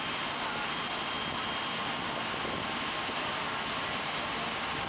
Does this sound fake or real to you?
real